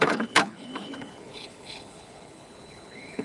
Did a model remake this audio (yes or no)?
yes